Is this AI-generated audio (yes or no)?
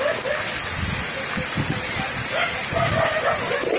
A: no